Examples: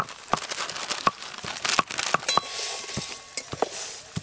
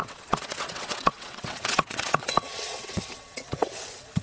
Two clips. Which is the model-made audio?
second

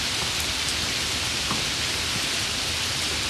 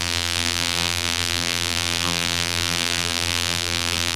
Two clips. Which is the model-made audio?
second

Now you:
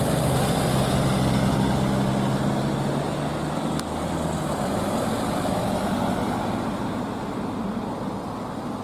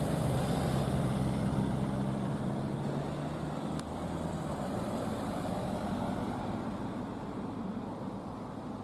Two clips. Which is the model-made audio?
second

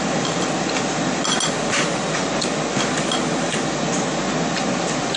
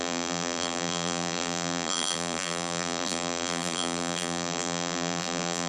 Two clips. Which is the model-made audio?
second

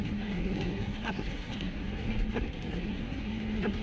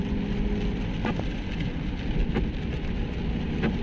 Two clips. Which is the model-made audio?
first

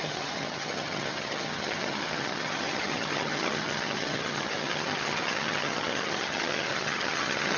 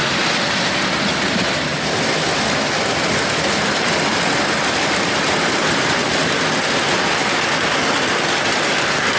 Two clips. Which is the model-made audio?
first